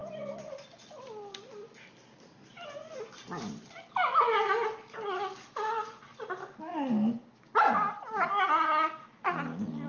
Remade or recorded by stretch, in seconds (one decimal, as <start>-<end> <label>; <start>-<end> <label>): 0.0-9.9 recorded